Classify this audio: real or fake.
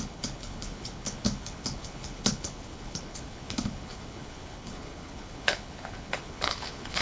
fake